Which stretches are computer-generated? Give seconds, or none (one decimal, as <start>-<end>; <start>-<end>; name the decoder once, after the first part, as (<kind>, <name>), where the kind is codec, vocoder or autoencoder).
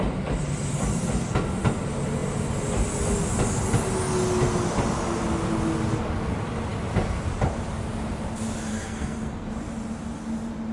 8.7-9.5 (codec, SNAC)